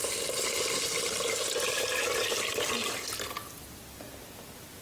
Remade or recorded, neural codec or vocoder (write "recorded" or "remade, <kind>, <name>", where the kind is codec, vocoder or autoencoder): recorded